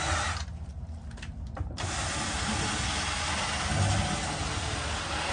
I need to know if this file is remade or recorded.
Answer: recorded